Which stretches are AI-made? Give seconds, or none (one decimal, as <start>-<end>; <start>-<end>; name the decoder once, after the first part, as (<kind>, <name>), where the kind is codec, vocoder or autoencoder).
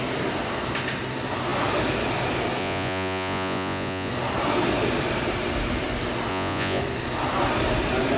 2.6-4.1 (vocoder, Vocos); 6.3-6.8